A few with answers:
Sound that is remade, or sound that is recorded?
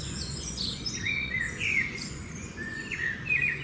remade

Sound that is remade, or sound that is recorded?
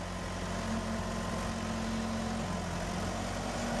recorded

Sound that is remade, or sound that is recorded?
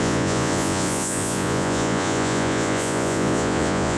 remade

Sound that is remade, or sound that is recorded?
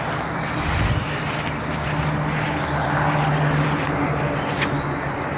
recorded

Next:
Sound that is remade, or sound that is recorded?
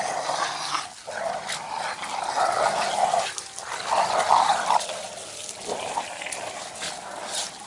recorded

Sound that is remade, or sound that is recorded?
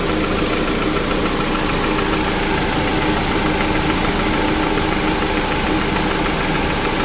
recorded